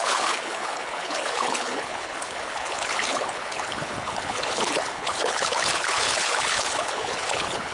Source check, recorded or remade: remade